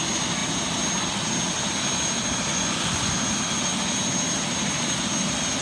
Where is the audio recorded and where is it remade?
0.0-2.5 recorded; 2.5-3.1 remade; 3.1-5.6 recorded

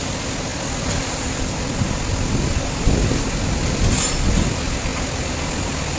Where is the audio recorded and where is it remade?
0.0-6.0 recorded

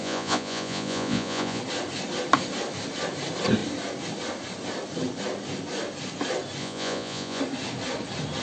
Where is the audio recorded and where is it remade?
0.0-1.6 remade; 1.6-6.6 recorded; 6.6-7.4 remade; 7.4-8.4 recorded

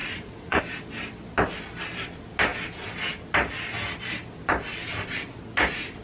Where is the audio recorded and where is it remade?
0.0-0.6 remade; 0.6-6.0 recorded